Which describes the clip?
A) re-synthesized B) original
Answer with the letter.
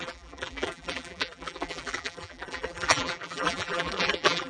A